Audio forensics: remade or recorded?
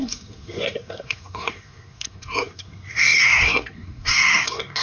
remade